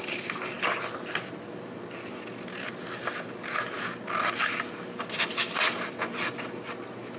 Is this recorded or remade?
recorded